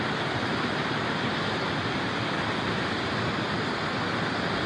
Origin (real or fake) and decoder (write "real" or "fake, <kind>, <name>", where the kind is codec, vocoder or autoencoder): fake, vocoder, BigVGAN v2